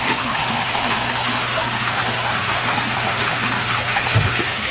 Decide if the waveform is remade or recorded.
remade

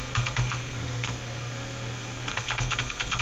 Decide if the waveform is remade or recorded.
remade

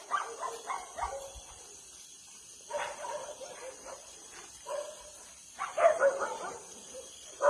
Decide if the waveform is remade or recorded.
recorded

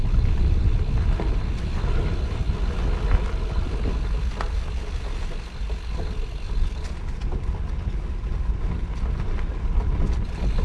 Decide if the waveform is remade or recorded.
recorded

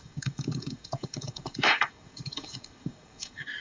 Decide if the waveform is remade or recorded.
remade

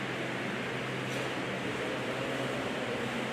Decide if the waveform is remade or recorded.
recorded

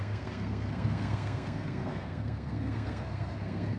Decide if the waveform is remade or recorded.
remade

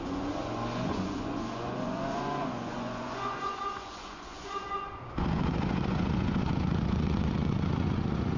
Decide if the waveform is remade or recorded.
remade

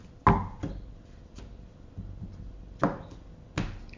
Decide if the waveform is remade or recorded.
recorded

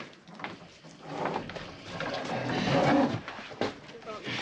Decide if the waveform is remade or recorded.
recorded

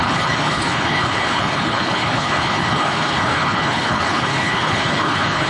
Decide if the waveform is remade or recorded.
remade